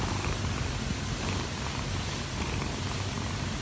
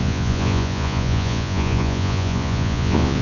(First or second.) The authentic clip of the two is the first